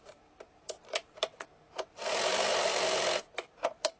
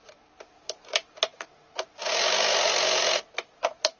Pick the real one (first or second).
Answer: second